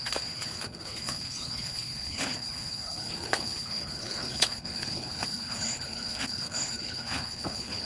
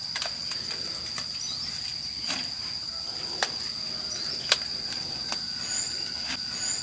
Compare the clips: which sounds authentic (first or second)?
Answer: second